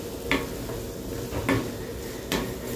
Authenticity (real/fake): real